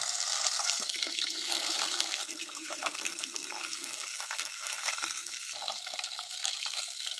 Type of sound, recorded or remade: remade